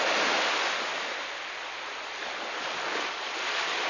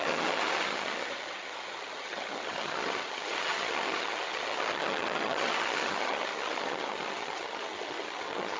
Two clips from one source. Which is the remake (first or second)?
second